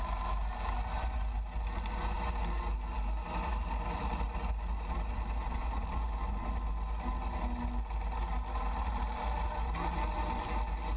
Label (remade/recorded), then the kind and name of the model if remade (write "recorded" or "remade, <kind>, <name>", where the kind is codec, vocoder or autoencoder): recorded